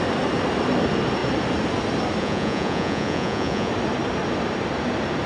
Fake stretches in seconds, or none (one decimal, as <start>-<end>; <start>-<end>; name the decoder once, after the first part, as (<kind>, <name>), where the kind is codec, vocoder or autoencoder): 2.2-3.7 (vocoder, Vocos)